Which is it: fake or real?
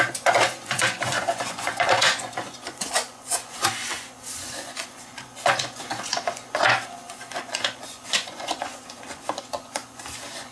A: fake